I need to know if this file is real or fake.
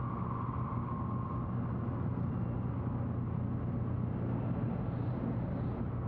real